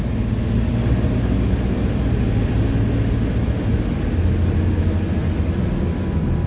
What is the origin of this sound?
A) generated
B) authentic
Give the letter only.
B